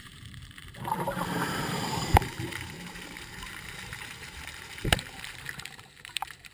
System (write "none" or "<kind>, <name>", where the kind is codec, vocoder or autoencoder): vocoder, BigVGAN v2